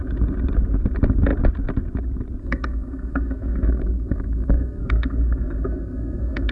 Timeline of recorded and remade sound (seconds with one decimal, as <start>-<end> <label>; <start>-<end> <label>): 0.0-2.4 recorded; 2.4-6.5 remade